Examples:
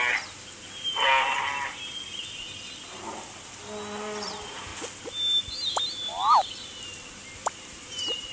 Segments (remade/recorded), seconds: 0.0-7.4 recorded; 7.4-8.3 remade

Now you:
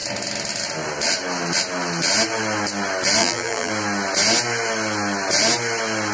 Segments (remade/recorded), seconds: 0.0-3.2 recorded; 3.2-3.7 remade; 3.7-6.1 recorded